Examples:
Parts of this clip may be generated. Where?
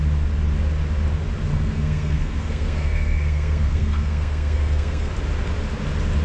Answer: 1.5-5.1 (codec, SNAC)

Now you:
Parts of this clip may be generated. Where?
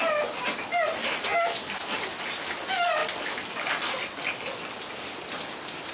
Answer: none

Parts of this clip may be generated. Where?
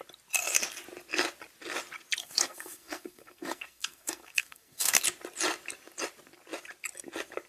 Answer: 2.2-5.0 (codec, SNAC)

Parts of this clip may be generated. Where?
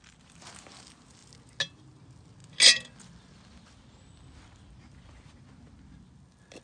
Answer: none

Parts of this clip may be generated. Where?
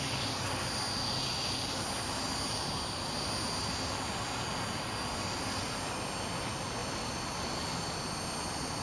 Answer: none